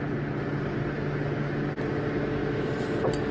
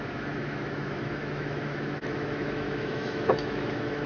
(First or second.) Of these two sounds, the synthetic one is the second